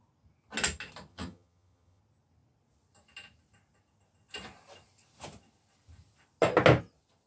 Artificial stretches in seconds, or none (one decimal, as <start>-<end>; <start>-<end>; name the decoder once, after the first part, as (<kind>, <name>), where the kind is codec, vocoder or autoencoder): 1.1-2.0 (vocoder, HiFi-GAN)